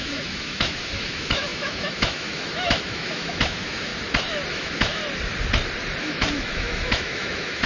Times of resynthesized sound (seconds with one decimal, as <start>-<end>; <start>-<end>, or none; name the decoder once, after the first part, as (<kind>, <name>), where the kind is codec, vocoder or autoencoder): 0.0-3.9 (autoencoder, DAC-VAE); 4.5-5.0; 6.0-7.7